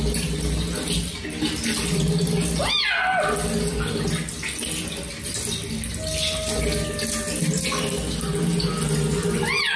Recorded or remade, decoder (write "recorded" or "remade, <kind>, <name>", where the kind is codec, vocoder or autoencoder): recorded